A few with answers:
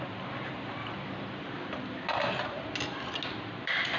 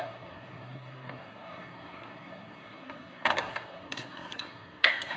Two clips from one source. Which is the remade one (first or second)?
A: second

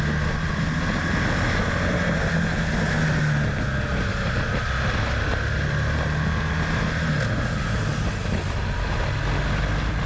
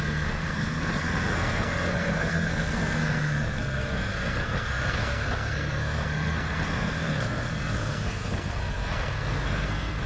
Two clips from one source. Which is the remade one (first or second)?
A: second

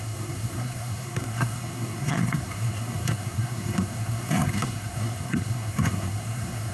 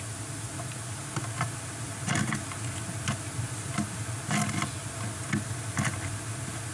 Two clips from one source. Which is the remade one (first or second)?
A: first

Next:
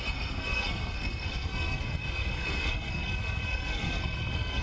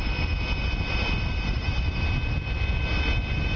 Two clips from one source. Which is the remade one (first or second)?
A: first